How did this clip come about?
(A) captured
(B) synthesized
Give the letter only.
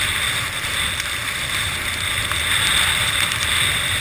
A